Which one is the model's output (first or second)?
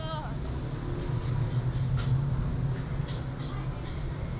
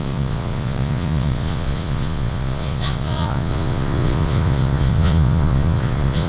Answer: second